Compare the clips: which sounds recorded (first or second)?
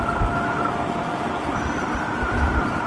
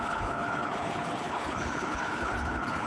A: first